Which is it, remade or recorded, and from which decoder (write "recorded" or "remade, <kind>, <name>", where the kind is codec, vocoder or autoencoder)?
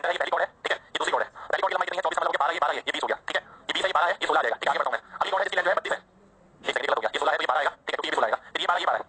recorded